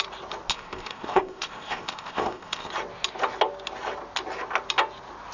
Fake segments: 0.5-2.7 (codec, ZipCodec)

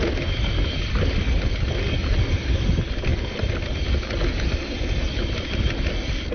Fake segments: none

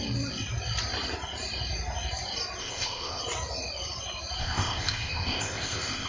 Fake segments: 2.6-3.2 (codec, ZipCodec); 4.4-6.1

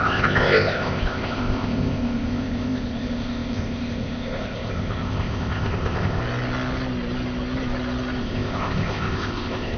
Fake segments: 0.0-6.2 (codec, ZipCodec); 8.2-9.8

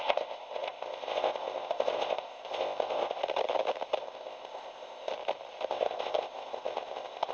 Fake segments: 0.0-3.2 (codec, ZipCodec); 4.0-5.1; 5.7-7.3